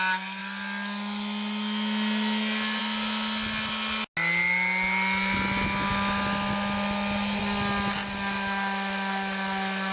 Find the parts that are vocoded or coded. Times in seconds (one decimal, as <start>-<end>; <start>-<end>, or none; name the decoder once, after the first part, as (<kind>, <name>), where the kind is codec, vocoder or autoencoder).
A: none